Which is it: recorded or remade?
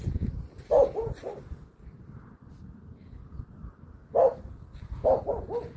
recorded